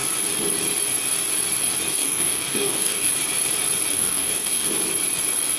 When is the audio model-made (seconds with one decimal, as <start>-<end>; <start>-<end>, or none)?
1.9-3.1; 3.9-4.7